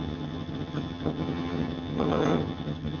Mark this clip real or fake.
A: fake